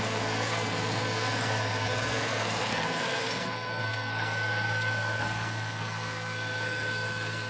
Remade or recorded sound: remade